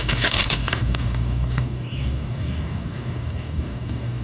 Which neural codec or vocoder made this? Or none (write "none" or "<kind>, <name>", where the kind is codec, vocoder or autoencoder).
codec, DAC